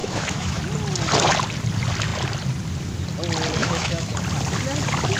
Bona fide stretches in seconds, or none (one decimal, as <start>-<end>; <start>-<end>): 0.6-3.6; 4.1-5.2